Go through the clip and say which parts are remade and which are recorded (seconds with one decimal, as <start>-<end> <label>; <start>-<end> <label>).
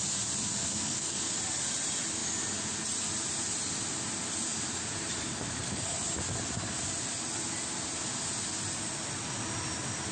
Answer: 0.0-0.6 recorded; 0.6-1.3 remade; 1.3-10.1 recorded